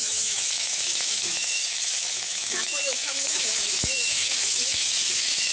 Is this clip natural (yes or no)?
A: no